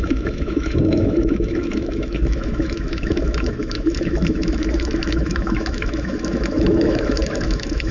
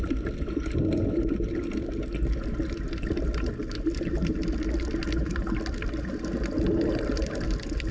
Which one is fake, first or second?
first